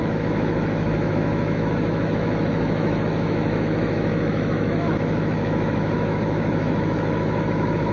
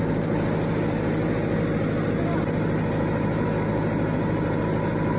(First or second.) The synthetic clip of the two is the first